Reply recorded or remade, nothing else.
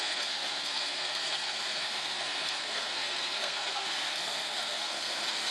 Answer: remade